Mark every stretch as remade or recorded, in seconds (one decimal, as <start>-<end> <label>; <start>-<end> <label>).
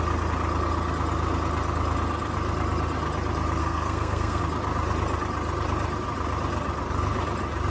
0.0-3.6 recorded; 3.6-4.4 remade; 4.4-7.7 recorded